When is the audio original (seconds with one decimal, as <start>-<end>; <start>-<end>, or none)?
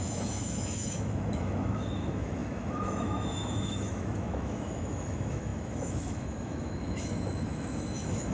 none